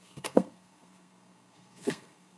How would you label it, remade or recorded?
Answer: remade